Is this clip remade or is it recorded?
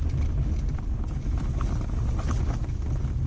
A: recorded